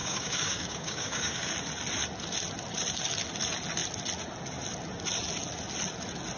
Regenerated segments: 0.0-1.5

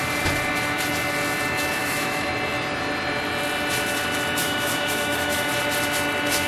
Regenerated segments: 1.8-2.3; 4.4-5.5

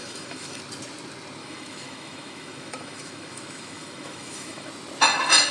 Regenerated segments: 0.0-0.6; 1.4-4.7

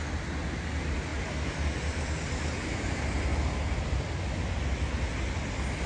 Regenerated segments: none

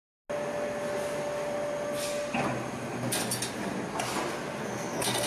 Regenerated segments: 4.6-5.3

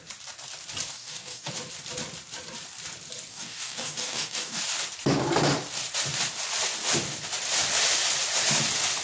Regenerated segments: 0.9-1.5; 3.3-4.6

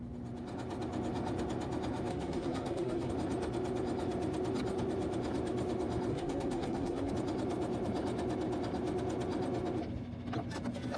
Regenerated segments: 2.1-3.1; 6.1-7.1

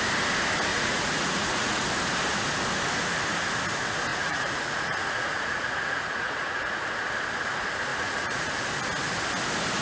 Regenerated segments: 0.7-1.8; 4.1-6.8; 7.9-8.5